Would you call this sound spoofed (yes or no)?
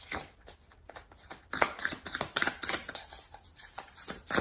no